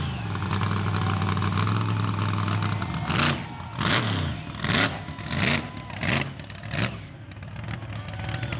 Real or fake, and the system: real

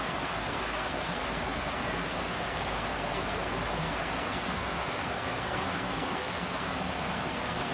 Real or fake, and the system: fake, codec, SNAC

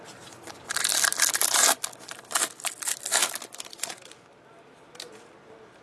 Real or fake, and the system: real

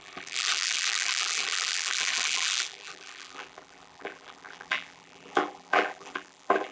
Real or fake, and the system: fake, vocoder, BigVGAN v2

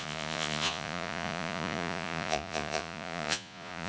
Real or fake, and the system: fake, vocoder, Vocos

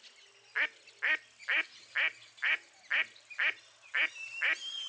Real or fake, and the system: real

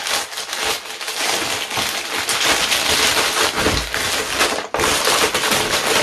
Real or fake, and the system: real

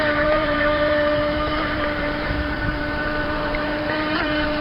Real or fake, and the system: fake, vocoder, BigVGAN v2